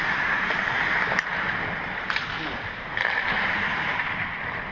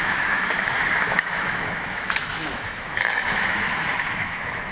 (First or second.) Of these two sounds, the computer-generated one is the second